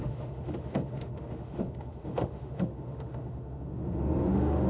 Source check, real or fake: fake